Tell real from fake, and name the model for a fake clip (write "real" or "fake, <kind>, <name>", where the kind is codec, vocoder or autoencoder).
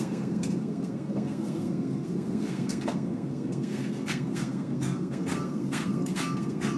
fake, codec, SNAC